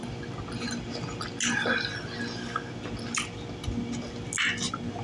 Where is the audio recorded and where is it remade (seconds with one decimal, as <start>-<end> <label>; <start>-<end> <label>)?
0.0-5.0 recorded